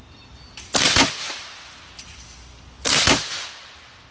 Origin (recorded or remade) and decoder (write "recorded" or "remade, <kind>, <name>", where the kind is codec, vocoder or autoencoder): recorded